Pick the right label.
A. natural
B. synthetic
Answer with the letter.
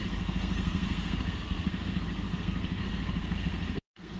B